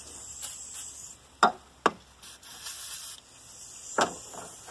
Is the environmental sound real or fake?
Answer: real